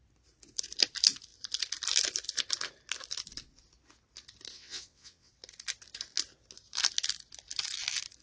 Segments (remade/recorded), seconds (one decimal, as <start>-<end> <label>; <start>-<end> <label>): 0.0-4.5 recorded; 4.5-5.3 remade; 5.3-8.2 recorded

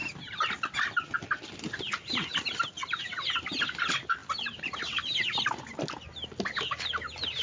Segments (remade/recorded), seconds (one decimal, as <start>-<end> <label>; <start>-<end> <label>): 0.0-7.4 recorded

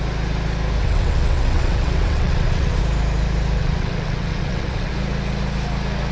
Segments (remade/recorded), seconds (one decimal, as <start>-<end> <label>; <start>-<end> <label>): 0.0-0.8 recorded; 0.8-2.8 remade; 2.8-3.6 recorded; 3.6-4.9 remade; 4.9-6.1 recorded